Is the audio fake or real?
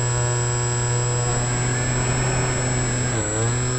real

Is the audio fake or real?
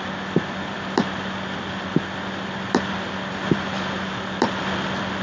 real